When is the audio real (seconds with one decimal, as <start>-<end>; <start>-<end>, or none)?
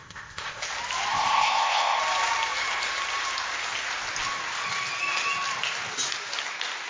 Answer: 0.7-1.1; 2.0-6.9